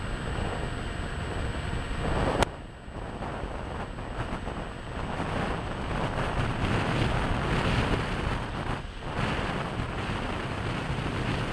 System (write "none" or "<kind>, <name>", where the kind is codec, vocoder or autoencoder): none